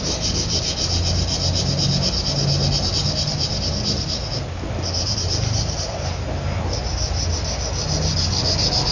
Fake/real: real